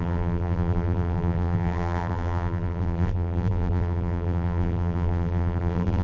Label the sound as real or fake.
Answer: fake